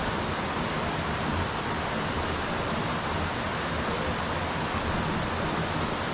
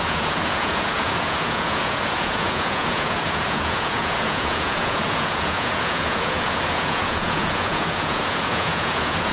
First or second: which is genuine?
first